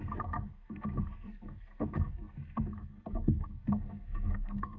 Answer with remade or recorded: remade